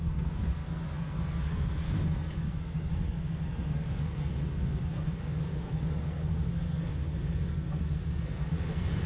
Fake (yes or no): yes